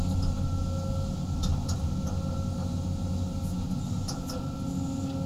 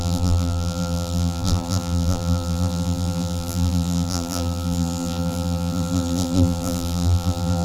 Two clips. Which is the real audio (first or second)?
first